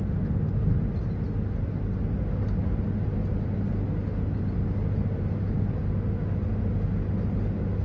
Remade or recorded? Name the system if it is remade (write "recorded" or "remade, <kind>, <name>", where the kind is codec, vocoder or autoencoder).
recorded